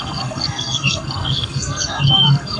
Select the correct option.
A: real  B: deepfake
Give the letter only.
B